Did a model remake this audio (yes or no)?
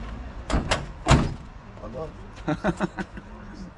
yes